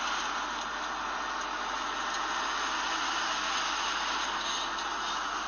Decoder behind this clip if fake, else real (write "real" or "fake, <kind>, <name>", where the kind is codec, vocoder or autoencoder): real